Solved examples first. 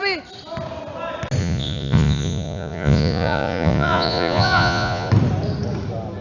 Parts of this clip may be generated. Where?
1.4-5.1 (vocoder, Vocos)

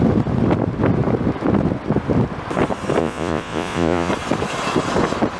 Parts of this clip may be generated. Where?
3.0-4.1 (vocoder, Vocos)

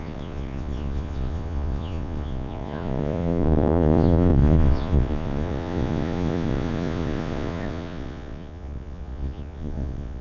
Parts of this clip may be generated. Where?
0.0-10.2 (vocoder, Vocos)

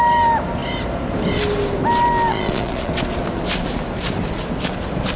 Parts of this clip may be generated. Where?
2.3-2.9 (vocoder, Vocos)

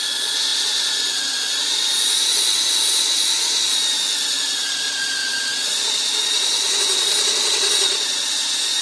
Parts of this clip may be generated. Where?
0.0-3.8 (vocoder, Vocos); 4.3-8.8

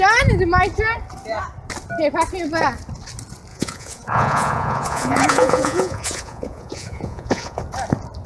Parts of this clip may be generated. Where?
3.5-7.6 (vocoder, Vocos)

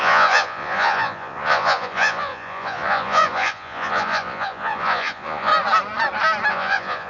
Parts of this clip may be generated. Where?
0.0-5.5 (vocoder, Vocos); 6.5-7.1

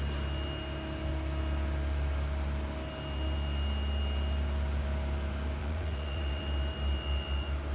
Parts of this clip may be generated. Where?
5.6-6.4 (vocoder, Vocos)